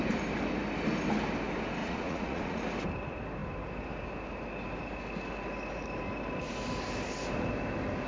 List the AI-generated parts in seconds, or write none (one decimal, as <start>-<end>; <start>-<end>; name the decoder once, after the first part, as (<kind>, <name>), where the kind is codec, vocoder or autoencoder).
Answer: 1.8-2.6 (vocoder, Vocos)